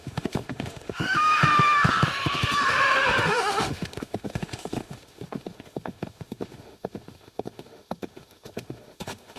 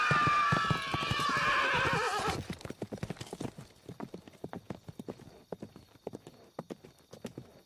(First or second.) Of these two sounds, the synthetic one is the first